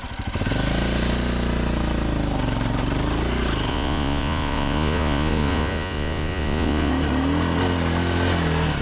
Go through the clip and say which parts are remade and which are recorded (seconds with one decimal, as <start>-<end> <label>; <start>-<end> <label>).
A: 0.0-3.7 recorded; 3.7-6.9 remade; 6.9-8.8 recorded